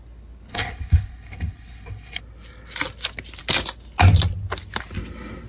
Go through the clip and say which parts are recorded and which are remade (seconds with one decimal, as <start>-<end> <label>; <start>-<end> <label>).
0.0-0.5 recorded; 0.5-2.2 remade; 2.2-5.5 recorded